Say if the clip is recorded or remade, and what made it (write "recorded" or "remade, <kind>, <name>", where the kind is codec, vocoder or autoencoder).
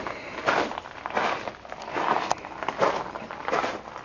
recorded